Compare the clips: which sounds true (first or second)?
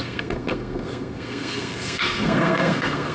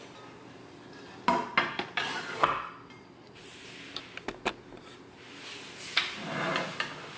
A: second